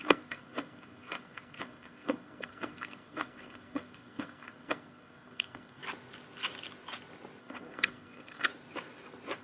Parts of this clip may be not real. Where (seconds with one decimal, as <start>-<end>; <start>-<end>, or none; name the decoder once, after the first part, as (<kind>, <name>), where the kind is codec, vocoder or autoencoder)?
0.0-5.8 (codec, SNAC); 7.4-8.5